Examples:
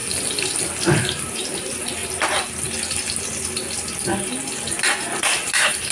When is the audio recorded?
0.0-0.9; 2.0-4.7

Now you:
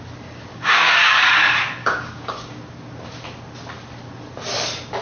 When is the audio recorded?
0.0-0.5; 1.3-1.8; 2.6-5.0

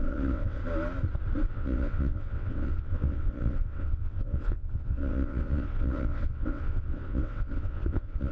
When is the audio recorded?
0.6-1.5